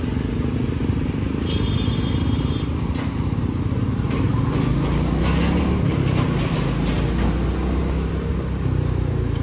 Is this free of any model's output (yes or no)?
yes